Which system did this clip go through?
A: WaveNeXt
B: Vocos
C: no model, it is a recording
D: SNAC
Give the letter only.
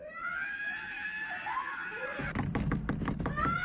C